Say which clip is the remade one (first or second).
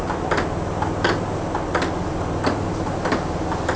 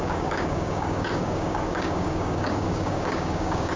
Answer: second